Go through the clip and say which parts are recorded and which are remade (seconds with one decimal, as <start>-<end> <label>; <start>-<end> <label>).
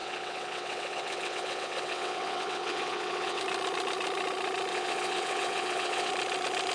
0.0-3.4 remade; 3.4-4.7 recorded; 4.7-6.1 remade; 6.1-6.7 recorded